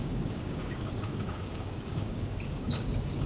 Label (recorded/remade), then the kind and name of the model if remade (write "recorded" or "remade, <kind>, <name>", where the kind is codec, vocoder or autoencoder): remade, codec, DAC